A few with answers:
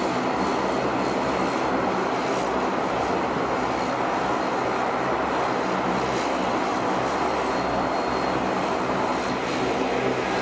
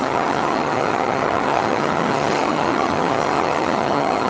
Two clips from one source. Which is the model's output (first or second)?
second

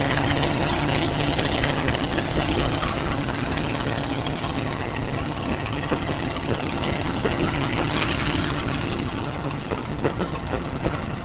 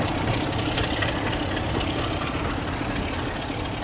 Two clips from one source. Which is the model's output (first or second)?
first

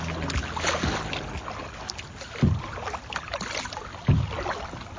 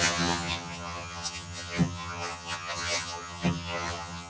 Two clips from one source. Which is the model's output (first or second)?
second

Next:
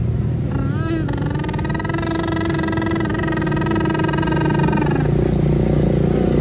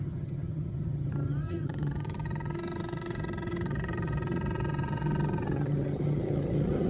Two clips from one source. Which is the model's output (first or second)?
second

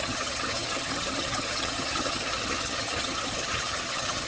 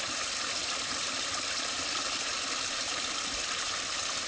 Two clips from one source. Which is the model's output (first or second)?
first